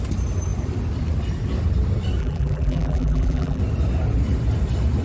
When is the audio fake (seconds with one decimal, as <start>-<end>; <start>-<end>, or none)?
2.2-3.6